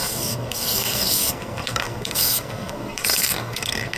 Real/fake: fake